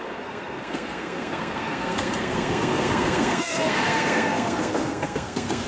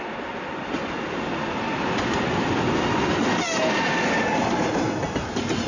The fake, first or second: first